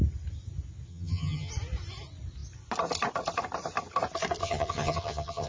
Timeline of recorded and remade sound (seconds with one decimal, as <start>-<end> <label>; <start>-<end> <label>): 0.0-0.9 recorded; 0.9-1.5 remade; 1.5-4.4 recorded; 4.4-5.5 remade